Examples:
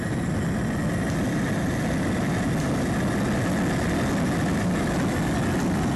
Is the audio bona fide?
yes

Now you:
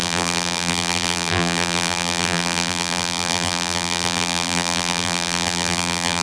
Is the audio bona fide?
no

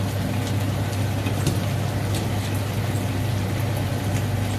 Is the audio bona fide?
yes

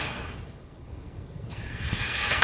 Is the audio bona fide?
no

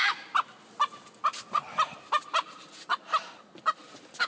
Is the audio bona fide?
yes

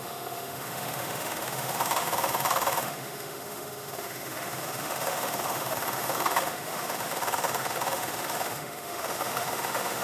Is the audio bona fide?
no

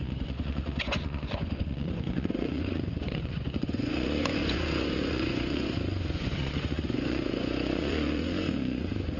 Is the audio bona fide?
no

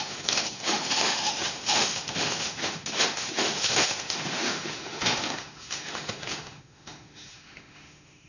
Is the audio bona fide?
no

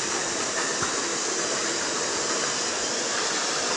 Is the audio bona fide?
yes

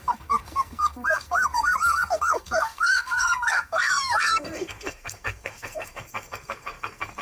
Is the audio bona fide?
no